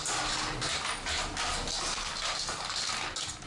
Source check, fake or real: real